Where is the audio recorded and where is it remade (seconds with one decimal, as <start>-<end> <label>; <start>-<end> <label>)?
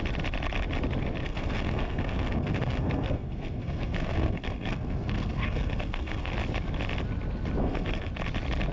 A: 0.0-1.2 recorded; 1.2-6.3 remade; 6.3-7.6 recorded; 7.6-8.1 remade; 8.1-8.7 recorded